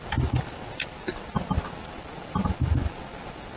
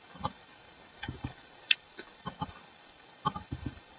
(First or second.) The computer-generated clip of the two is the second